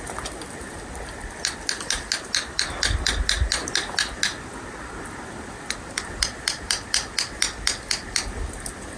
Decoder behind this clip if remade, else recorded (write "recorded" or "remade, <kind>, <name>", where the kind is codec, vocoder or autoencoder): recorded